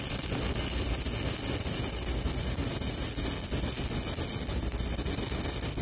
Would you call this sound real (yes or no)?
yes